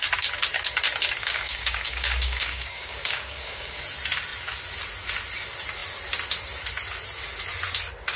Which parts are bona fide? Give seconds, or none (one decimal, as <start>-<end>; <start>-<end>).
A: 0.0-1.2; 3.8-8.2